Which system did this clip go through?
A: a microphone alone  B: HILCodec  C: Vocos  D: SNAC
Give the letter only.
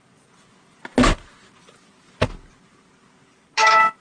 A